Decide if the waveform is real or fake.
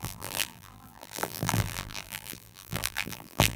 fake